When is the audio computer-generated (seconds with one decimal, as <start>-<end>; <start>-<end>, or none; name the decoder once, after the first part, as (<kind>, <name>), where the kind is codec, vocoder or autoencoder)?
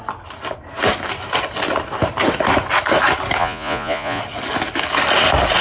3.4-4.2 (vocoder, Vocos)